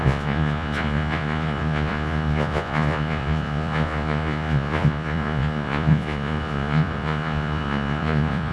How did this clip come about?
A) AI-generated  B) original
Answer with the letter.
A